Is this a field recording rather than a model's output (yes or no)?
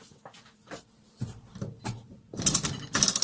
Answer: yes